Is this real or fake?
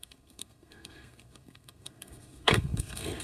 fake